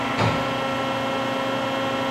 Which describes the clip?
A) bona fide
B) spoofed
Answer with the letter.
A